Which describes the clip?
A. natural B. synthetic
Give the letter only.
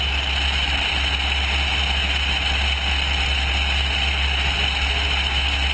A